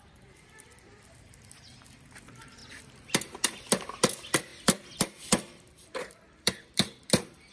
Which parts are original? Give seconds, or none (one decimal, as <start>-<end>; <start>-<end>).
none